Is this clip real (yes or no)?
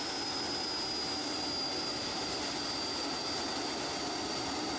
yes